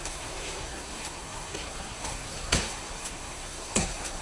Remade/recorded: remade